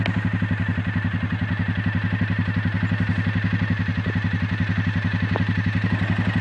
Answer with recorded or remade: recorded